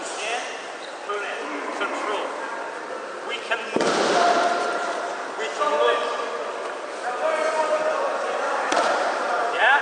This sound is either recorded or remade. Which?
remade